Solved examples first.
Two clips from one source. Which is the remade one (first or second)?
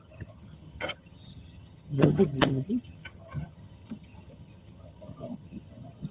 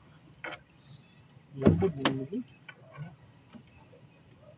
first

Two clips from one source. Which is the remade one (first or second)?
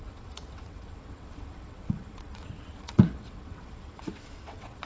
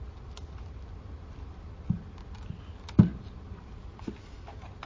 first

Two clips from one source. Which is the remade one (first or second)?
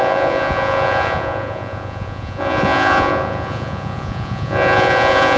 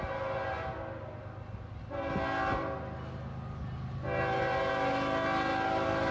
first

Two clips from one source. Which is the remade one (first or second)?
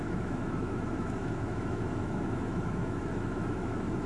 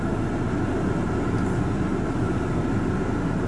first